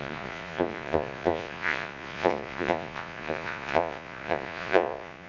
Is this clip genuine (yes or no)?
no